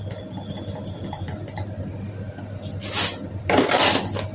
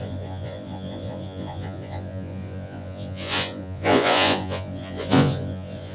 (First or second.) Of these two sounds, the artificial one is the second